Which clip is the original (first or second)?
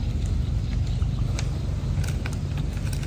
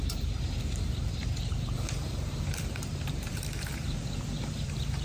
first